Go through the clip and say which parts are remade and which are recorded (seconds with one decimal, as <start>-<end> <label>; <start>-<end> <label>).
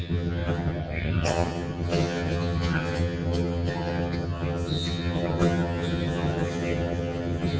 0.0-7.6 remade